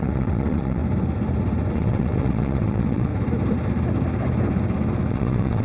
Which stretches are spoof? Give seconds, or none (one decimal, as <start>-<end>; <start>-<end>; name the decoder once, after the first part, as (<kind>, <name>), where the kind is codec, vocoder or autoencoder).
0.0-0.8 (vocoder, WaveNeXt); 1.7-3.1; 5.1-5.6